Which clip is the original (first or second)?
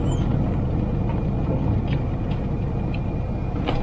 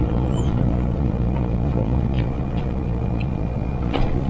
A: first